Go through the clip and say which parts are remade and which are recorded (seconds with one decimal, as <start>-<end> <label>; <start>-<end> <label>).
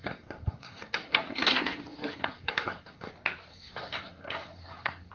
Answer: 0.0-3.1 remade; 3.1-3.5 recorded; 3.5-5.1 remade